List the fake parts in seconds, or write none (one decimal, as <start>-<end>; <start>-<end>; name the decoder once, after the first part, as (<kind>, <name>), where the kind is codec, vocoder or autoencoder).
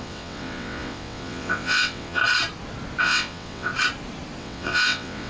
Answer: 0.0-2.2 (vocoder, WaveNeXt); 3.0-3.7; 4.4-5.3